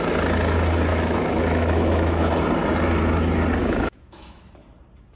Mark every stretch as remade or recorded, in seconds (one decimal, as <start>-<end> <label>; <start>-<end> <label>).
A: 0.0-0.9 recorded; 0.9-2.3 remade; 2.3-3.6 recorded; 3.6-4.4 remade; 4.4-5.2 recorded